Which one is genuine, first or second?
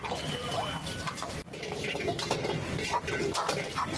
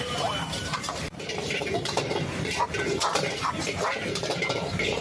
first